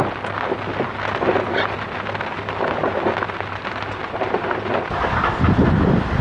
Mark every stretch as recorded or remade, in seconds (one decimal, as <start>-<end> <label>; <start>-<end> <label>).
0.0-6.2 recorded